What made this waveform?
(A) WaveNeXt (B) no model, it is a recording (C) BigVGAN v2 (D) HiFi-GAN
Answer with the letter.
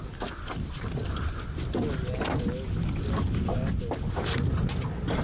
B